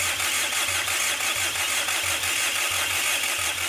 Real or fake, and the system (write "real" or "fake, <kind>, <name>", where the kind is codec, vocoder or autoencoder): fake, vocoder, BigVGAN v2